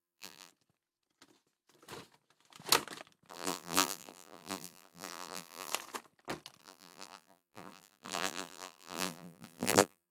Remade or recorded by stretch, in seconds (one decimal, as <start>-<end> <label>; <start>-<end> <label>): 0.0-0.5 remade; 0.5-3.3 recorded; 3.3-5.7 remade; 5.7-6.6 recorded; 6.6-10.1 remade